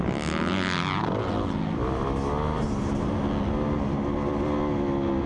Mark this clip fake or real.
real